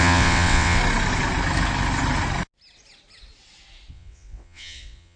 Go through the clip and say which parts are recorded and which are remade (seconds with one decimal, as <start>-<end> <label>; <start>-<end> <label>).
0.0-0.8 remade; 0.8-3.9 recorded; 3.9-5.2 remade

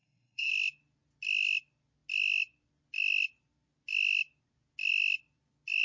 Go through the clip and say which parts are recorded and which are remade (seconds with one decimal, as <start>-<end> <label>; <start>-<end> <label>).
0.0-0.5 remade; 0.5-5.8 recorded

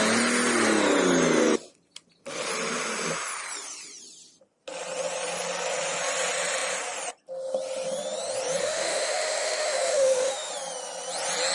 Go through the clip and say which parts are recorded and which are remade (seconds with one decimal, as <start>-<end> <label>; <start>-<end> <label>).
0.0-8.6 recorded; 8.6-10.5 remade; 10.5-11.5 recorded

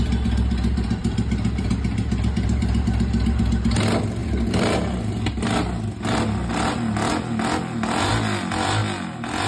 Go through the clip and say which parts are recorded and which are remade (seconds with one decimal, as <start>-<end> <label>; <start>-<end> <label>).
0.0-9.5 recorded